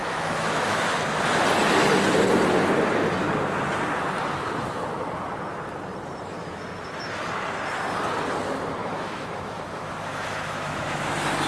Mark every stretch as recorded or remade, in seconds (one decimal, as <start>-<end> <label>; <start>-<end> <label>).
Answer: 0.0-0.9 remade; 0.9-8.8 recorded; 8.8-11.1 remade; 11.1-11.5 recorded